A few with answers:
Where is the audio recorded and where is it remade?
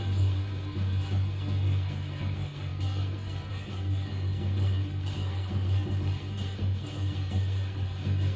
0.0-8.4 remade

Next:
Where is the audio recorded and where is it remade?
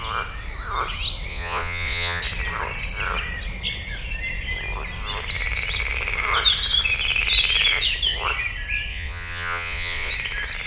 0.0-1.3 recorded; 1.3-2.2 remade; 2.2-8.9 recorded; 8.9-10.1 remade; 10.1-10.7 recorded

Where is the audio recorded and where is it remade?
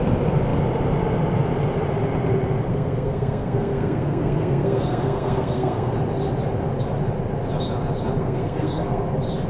0.0-2.7 recorded; 2.7-5.9 remade; 5.9-8.2 recorded; 8.2-9.0 remade; 9.0-9.5 recorded